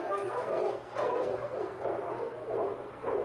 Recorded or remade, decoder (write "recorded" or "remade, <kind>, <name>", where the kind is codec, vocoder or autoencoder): remade, codec, SNAC